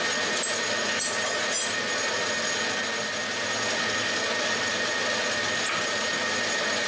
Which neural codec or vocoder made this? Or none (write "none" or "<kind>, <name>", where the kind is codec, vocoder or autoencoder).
none